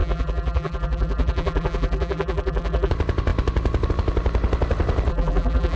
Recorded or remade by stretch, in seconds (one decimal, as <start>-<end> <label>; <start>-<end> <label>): 0.0-2.9 remade; 2.9-5.1 recorded; 5.1-5.8 remade